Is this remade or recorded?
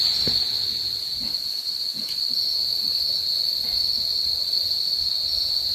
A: recorded